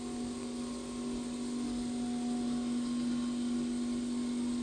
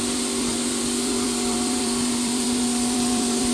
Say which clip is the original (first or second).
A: first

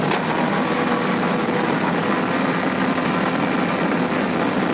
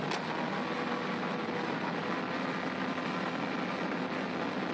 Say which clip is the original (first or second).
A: second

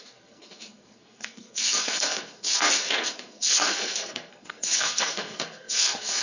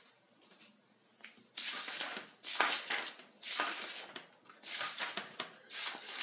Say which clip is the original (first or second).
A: second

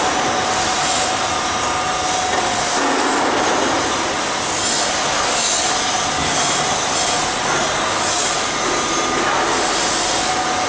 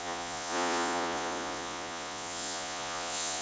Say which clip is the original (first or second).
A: first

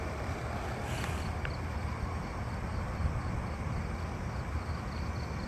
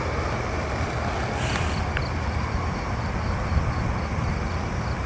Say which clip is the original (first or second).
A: second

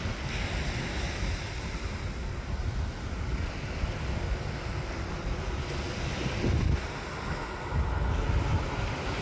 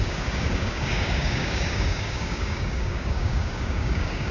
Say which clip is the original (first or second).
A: first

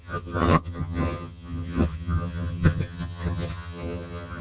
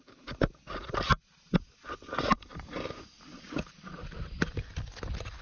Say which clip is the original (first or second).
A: second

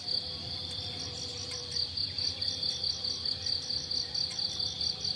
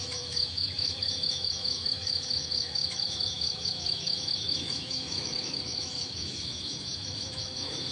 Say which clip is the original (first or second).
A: first